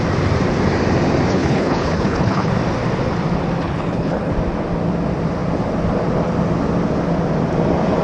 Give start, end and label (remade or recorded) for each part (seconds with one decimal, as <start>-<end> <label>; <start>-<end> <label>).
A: 0.0-1.3 recorded; 1.3-2.5 remade; 2.5-3.6 recorded; 3.6-4.3 remade; 4.3-8.0 recorded